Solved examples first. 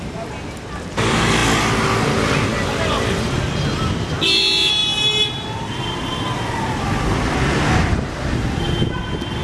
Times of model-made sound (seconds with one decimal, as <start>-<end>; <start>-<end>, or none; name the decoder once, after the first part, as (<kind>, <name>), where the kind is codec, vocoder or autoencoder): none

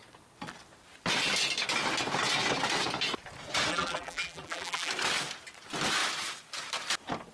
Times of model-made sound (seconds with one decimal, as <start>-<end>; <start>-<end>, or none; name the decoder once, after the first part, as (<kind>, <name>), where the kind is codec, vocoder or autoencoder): 3.7-4.9 (vocoder, BigVGAN v2)

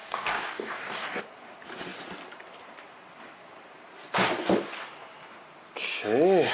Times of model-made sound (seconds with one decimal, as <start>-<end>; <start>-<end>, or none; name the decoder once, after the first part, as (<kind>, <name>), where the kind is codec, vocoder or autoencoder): 0.0-1.2 (codec, DAC)

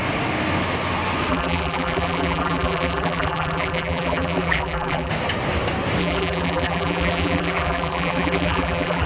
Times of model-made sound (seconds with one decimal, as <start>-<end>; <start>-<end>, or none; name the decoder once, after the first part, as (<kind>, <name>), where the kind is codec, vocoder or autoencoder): 1.3-5.1 (vocoder, BigVGAN v2); 6.0-9.1

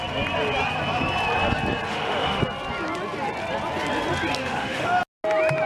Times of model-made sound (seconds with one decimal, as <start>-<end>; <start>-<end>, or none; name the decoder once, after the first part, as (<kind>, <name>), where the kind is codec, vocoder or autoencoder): 1.9-2.4 (autoencoder, DAC-VAE); 4.4-5.0

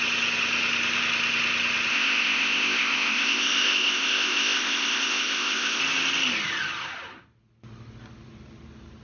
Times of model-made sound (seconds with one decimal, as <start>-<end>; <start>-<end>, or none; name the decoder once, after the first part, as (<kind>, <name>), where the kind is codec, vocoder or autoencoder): 1.9-5.8 (codec, ZipCodec)

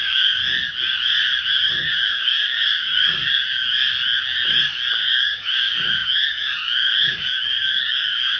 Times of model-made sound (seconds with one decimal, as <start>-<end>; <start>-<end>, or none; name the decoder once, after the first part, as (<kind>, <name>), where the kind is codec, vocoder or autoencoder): 0.0-0.4 (codec, DAC); 1.5-3.6; 4.9-8.4

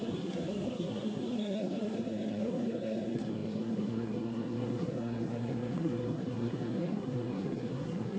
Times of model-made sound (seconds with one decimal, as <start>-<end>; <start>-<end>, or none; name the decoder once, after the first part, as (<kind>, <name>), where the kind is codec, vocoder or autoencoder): 0.0-8.2 (codec, SNAC)